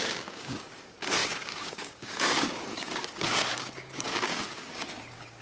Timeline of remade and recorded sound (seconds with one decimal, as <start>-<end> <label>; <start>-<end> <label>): 0.0-5.4 remade